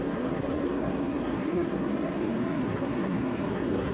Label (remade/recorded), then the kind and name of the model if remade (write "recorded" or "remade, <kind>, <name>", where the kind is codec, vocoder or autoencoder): remade, codec, SNAC